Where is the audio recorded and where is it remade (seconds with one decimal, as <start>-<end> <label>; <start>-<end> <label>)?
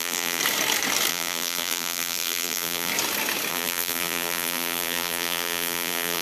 0.0-0.4 remade; 0.4-1.1 recorded; 1.1-2.9 remade; 2.9-3.5 recorded; 3.5-6.2 remade